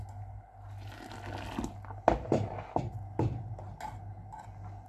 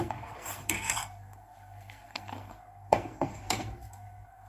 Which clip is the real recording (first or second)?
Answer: first